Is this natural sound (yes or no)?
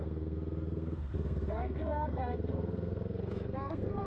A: no